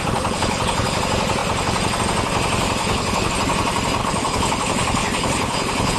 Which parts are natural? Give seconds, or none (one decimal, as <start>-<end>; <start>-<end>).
1.0-2.8; 3.3-4.0